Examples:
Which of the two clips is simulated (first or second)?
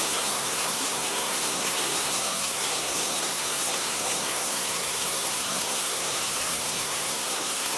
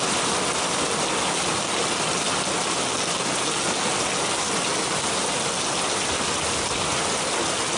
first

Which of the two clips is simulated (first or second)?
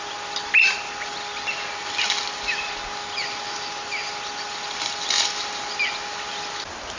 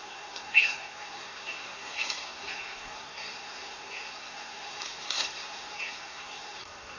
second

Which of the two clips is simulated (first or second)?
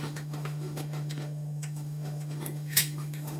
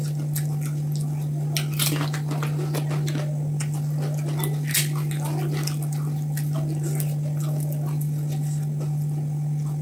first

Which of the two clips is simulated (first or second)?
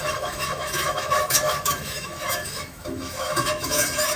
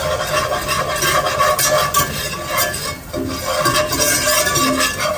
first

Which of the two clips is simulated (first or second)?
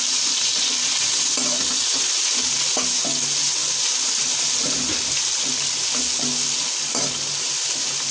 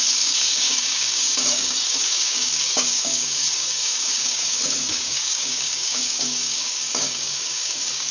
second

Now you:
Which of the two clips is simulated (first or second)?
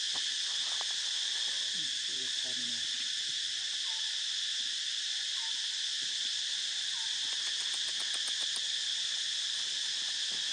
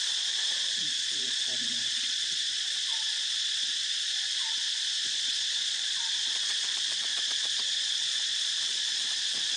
second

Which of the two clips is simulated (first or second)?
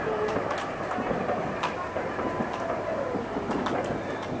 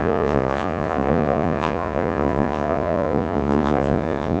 second